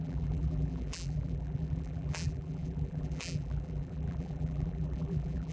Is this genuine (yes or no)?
no